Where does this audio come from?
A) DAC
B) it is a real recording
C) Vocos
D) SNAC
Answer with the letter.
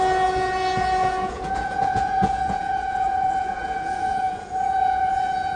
C